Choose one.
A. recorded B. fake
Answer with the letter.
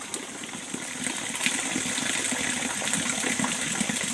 A